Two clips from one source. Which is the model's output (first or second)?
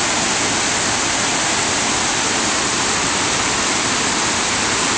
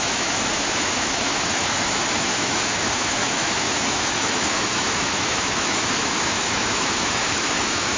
second